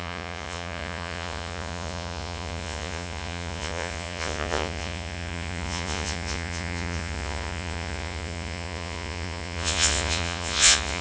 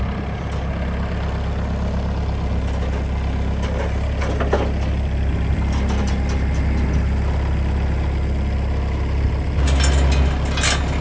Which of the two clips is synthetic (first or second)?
first